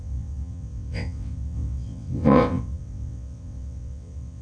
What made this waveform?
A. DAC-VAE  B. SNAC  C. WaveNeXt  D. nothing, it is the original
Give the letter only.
C